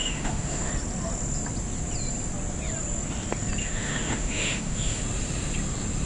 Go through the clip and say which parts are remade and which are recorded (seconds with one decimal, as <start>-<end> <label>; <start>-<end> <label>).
0.0-0.7 remade; 0.7-3.6 recorded; 3.6-5.0 remade; 5.0-6.1 recorded